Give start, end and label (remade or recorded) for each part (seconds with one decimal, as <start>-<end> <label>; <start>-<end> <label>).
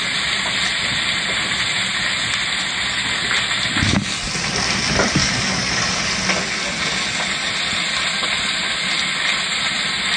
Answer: 0.0-5.2 recorded; 5.2-6.0 remade; 6.0-10.2 recorded